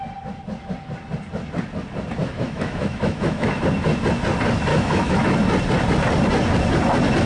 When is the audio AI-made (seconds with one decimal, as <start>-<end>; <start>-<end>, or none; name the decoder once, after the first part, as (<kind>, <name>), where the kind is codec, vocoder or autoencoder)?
2.2-3.6 (autoencoder, DAC-VAE); 4.7-5.3